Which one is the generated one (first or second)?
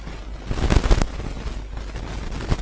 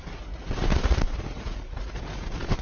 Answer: second